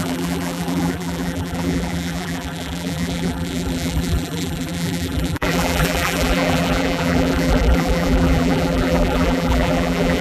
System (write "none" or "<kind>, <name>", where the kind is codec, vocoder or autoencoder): vocoder, BigVGAN v2